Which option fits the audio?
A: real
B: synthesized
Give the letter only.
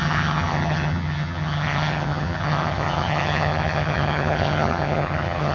B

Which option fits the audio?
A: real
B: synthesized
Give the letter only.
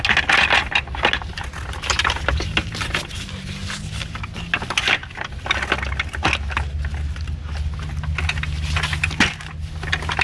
A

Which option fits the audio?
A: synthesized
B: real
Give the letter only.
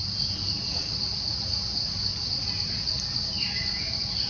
B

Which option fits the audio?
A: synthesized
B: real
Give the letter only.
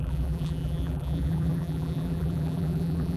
A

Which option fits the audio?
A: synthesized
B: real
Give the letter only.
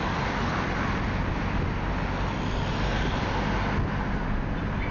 B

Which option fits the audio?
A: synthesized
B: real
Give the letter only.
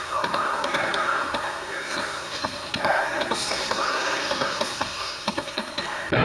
A